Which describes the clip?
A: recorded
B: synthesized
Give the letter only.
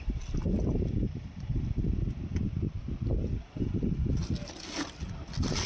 A